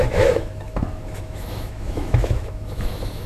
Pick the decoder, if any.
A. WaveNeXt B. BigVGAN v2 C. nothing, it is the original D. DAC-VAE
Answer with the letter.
D